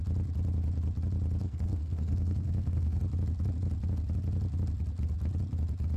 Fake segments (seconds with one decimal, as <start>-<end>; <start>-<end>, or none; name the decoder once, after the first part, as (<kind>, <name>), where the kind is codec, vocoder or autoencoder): 1.4-3.0 (codec, SNAC)